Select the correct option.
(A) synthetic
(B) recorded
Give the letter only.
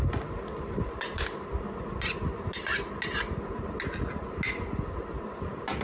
B